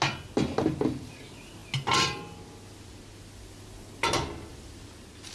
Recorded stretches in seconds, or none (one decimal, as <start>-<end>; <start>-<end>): 0.0-4.5